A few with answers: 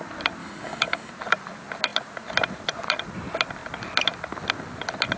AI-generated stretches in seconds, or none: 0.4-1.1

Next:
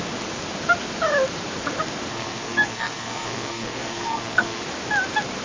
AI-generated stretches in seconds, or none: 2.1-4.6

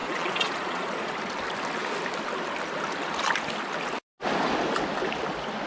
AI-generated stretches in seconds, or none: 0.0-1.1

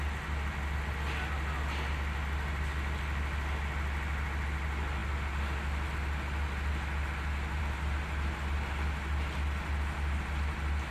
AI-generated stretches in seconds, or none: none

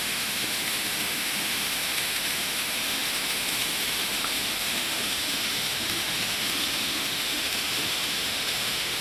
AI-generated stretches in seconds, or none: 0.0-9.0

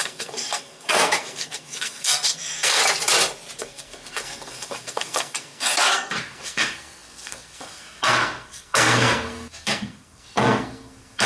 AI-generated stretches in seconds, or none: 0.0-2.8; 3.6-11.3

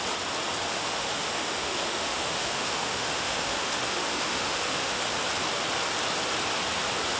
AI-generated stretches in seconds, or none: 0.7-5.0